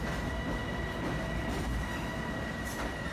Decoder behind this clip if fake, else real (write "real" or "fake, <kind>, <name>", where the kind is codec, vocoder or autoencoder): real